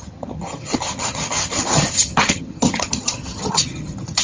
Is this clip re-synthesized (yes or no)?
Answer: yes